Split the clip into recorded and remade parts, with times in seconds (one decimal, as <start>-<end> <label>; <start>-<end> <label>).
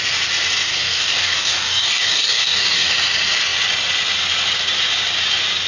0.0-0.7 recorded; 0.7-2.9 remade; 2.9-5.7 recorded